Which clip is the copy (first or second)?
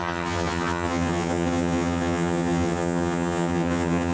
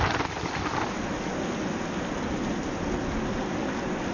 first